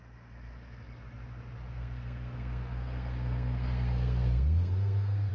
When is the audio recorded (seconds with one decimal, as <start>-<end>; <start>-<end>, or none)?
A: 0.0-1.7